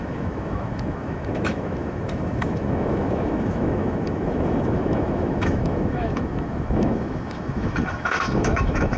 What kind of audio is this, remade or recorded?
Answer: remade